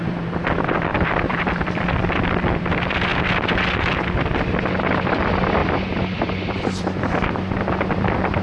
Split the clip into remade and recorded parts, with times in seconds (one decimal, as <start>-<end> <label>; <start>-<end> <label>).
0.0-3.1 remade; 3.1-3.7 recorded; 3.7-8.4 remade

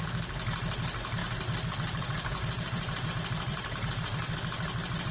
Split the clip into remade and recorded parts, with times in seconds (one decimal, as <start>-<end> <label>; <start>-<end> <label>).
0.0-1.2 recorded; 1.2-3.1 remade; 3.1-3.5 recorded; 3.5-4.3 remade; 4.3-5.1 recorded

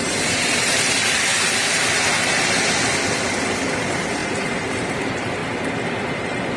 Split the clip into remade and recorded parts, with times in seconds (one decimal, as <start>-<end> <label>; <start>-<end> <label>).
0.0-1.3 remade; 1.3-3.7 recorded; 3.7-5.4 remade; 5.4-5.9 recorded; 5.9-6.6 remade

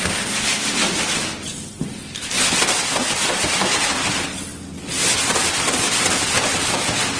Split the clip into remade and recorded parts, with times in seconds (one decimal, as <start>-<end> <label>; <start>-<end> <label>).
0.0-4.5 remade; 4.5-5.3 recorded; 5.3-7.2 remade

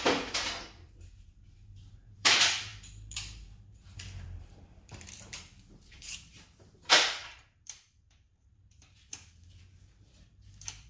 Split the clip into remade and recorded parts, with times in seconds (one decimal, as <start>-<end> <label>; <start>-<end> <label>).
0.0-10.9 remade

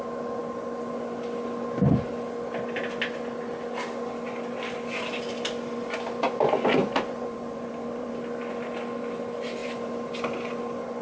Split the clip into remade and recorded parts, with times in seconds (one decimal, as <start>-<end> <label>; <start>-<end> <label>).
0.0-6.8 recorded; 6.8-8.1 remade; 8.1-9.6 recorded; 9.6-10.1 remade; 10.1-11.0 recorded

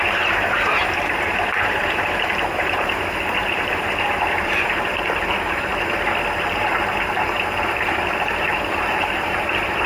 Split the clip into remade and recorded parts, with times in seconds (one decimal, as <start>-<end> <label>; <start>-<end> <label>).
0.0-5.7 remade; 5.7-6.4 recorded; 6.4-9.9 remade

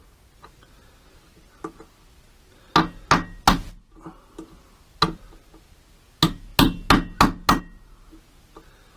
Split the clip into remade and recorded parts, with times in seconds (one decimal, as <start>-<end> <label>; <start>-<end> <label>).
0.0-9.0 recorded